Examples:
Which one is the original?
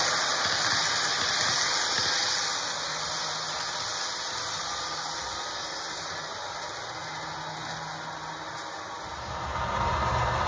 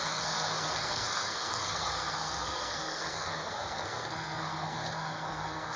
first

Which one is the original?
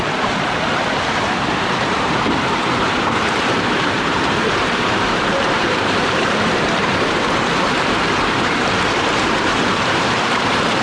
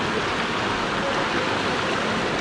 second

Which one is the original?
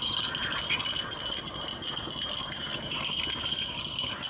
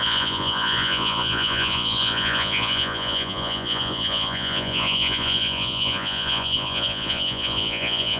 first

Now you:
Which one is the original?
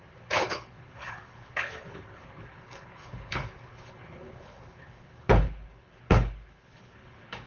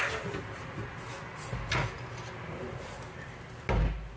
second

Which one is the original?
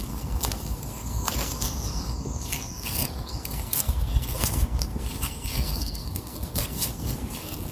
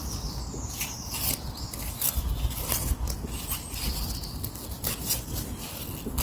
second